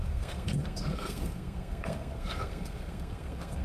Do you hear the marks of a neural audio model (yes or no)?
yes